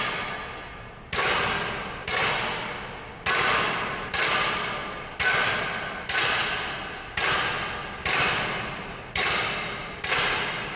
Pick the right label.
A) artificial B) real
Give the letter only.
B